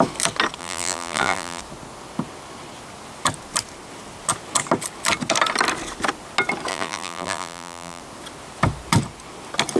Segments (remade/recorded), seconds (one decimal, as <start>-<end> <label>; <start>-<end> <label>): 0.0-0.6 recorded; 0.6-1.6 remade; 1.6-6.7 recorded; 6.7-8.0 remade; 8.0-9.8 recorded